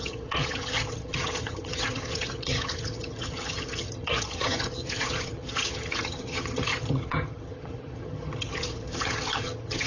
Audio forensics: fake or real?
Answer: fake